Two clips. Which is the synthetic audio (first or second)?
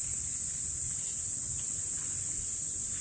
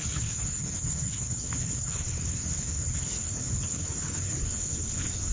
second